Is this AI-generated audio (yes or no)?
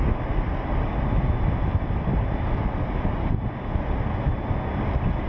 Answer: no